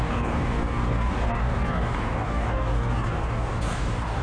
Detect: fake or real fake